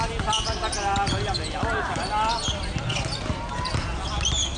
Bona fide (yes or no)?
yes